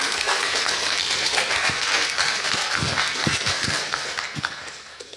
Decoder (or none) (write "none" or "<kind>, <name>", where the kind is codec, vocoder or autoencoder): codec, SNAC